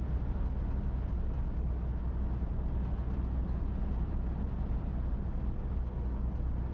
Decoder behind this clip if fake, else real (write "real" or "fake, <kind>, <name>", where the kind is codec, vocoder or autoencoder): real